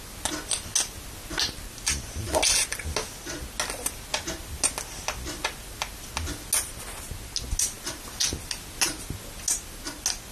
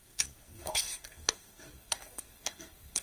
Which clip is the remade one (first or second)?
second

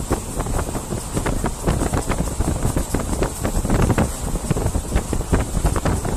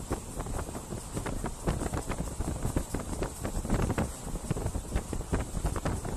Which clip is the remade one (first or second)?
second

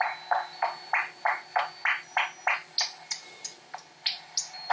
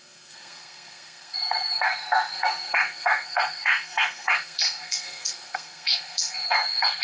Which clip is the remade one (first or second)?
second